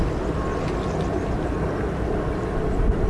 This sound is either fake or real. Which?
real